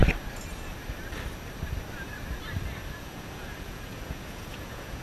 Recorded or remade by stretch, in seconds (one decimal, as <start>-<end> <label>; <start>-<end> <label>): 0.0-3.0 recorded; 3.0-5.0 remade